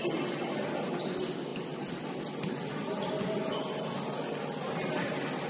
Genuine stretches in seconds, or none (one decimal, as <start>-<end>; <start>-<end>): 0.0-5.5